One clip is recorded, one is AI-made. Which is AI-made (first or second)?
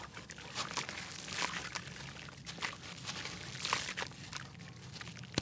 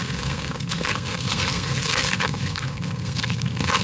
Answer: second